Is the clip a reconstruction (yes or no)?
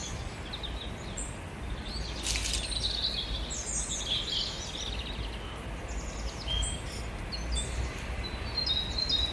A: no